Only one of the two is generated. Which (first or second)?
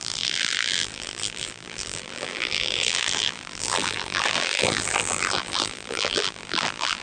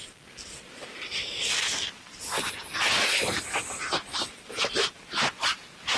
first